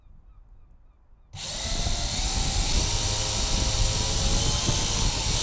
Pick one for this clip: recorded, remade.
recorded